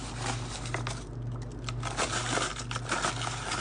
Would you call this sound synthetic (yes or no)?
no